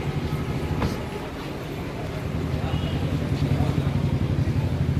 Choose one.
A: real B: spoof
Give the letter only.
A